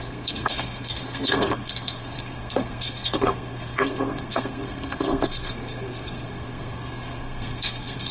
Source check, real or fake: fake